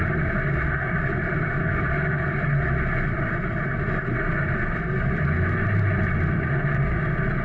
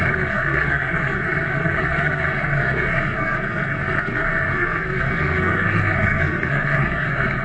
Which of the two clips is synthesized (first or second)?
second